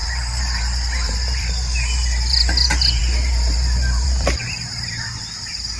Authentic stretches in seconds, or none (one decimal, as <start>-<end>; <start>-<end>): none